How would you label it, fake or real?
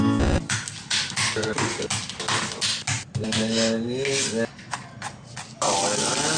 real